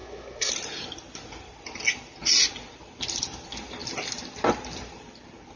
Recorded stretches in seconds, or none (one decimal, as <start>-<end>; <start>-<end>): 0.5-5.6